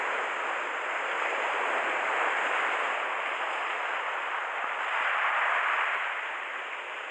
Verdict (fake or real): real